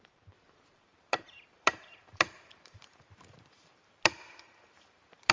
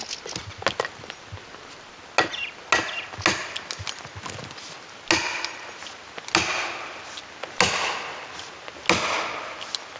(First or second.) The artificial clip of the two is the first